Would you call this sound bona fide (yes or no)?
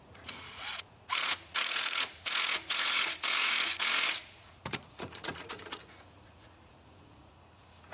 no